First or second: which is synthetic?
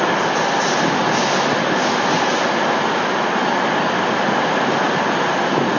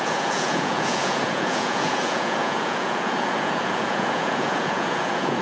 second